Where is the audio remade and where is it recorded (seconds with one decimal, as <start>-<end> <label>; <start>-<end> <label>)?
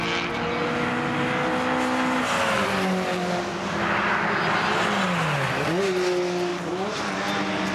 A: 0.0-6.5 recorded; 6.5-7.1 remade; 7.1-7.7 recorded